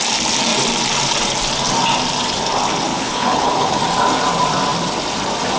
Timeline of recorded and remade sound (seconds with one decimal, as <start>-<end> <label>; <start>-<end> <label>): 0.0-2.9 recorded; 2.9-3.8 remade; 3.8-5.6 recorded

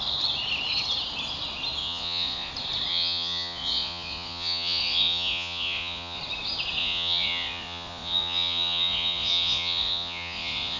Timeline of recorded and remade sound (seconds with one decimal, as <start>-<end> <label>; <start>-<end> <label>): 0.0-1.8 recorded; 1.8-2.5 remade; 2.5-2.9 recorded; 2.9-6.2 remade; 6.2-6.8 recorded; 6.8-10.8 remade

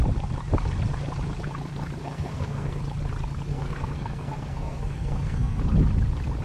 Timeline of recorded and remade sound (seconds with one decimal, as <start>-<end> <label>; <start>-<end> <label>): 0.0-2.0 recorded; 2.0-2.8 remade; 2.8-3.5 recorded; 3.5-5.6 remade; 5.6-6.4 recorded